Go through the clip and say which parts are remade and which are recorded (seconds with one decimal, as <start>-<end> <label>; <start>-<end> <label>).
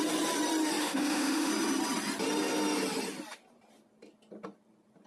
0.0-0.8 recorded; 0.8-1.5 remade; 1.5-5.1 recorded